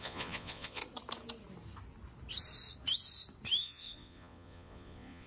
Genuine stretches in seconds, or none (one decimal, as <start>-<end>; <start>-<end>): 0.8-3.6